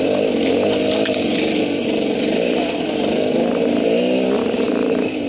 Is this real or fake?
real